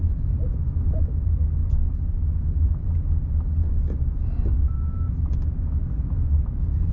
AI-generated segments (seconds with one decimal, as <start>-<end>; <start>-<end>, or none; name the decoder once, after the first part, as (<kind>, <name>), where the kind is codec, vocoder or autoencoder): none